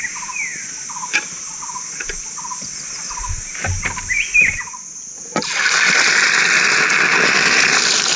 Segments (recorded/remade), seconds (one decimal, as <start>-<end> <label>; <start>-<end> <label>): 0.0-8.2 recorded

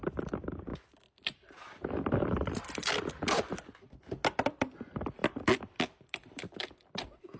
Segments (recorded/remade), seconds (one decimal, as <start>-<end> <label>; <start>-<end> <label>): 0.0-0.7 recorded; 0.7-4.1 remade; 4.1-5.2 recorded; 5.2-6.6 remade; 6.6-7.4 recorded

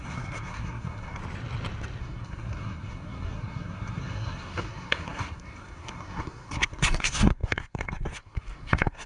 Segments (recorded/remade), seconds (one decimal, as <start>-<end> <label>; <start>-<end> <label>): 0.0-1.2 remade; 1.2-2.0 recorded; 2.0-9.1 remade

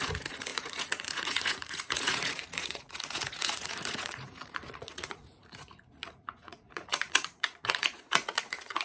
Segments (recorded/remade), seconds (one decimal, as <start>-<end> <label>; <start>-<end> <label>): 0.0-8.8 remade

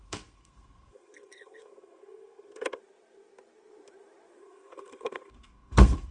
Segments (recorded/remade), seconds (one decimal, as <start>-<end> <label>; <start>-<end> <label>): 0.0-2.8 remade; 2.8-4.4 recorded; 4.4-6.1 remade